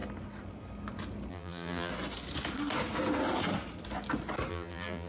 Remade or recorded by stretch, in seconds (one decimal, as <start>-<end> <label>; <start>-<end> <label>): 0.0-1.3 recorded; 1.3-1.9 remade; 1.9-4.5 recorded; 4.5-5.1 remade

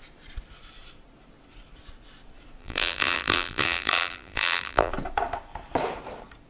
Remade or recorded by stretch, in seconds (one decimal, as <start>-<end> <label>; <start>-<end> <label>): 0.0-2.6 recorded; 2.6-4.9 remade; 4.9-6.5 recorded

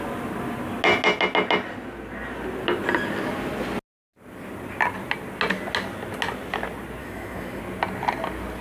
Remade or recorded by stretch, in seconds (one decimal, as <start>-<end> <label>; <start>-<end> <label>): 0.0-7.0 recorded; 7.0-7.6 remade; 7.6-8.6 recorded

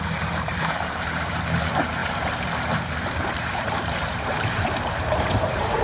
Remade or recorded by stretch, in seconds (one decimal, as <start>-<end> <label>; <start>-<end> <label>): 0.0-5.8 remade

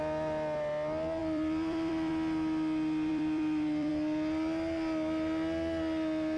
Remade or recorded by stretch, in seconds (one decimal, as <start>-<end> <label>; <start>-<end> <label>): 0.0-1.2 recorded; 1.2-2.1 remade; 2.1-3.1 recorded; 3.1-3.9 remade; 3.9-6.4 recorded